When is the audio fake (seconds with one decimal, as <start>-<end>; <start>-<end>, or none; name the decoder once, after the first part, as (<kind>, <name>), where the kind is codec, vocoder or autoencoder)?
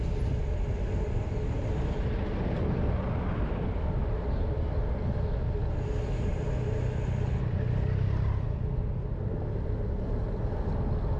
none